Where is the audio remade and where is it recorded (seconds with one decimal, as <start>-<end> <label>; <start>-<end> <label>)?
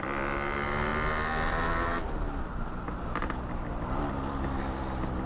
0.0-5.3 recorded